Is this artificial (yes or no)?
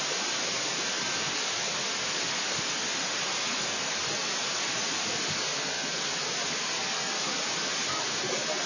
no